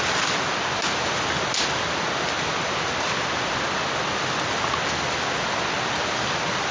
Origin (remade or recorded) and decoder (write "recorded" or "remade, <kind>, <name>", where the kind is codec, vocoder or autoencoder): recorded